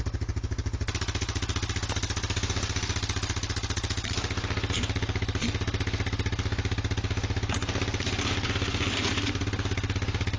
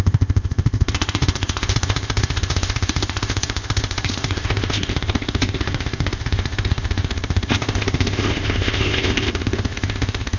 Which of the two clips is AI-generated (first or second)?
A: second